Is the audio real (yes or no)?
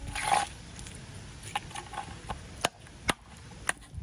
yes